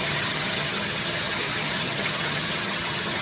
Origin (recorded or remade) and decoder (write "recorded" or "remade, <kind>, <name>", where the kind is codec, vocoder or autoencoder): remade, vocoder, HiFi-GAN